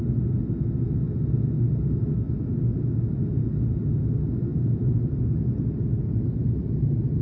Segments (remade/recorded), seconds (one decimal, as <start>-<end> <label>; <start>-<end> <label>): 0.0-4.5 recorded; 4.5-5.2 remade; 5.2-6.6 recorded; 6.6-7.2 remade